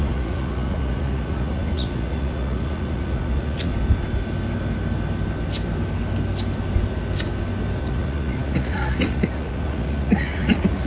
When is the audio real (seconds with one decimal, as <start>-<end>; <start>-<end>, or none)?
3.7-7.8